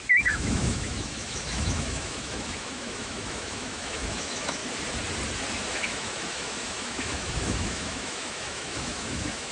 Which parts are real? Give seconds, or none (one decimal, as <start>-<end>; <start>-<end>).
4.6-5.7